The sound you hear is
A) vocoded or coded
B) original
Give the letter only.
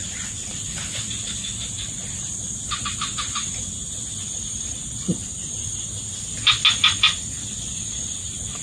B